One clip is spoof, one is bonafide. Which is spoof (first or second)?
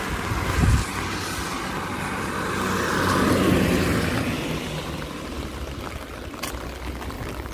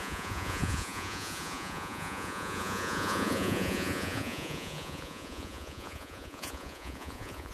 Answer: second